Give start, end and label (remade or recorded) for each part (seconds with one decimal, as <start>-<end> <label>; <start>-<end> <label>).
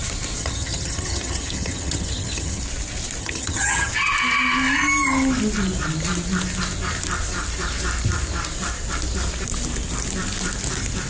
0.0-0.4 recorded; 0.4-2.6 remade; 2.6-3.2 recorded; 3.2-3.9 remade; 3.9-11.1 recorded